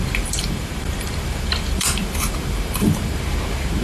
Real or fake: fake